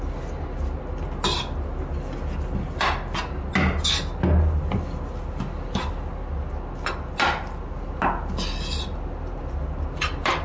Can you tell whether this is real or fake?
real